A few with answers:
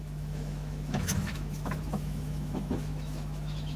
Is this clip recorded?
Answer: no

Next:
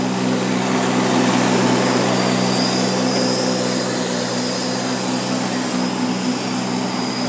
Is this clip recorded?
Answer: yes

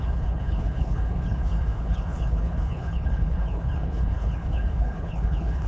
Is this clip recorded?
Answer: no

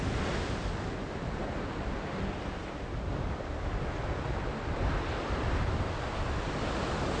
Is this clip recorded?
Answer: yes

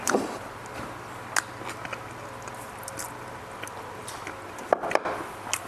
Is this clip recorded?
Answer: yes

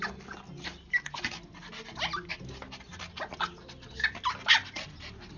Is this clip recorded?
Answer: yes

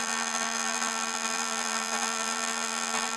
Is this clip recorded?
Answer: no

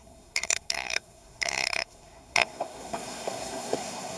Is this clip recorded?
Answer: no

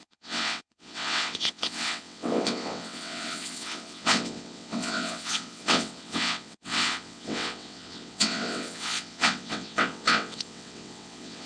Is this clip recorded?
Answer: no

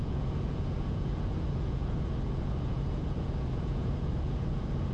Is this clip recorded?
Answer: no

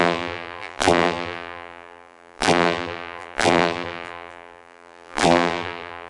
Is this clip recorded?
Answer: no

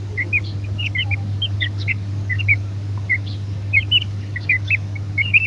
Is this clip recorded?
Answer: no